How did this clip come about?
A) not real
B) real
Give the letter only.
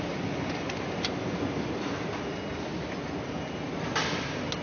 B